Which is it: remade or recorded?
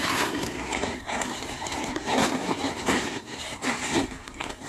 remade